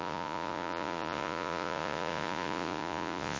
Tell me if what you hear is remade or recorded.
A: remade